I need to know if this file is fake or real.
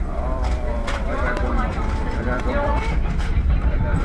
fake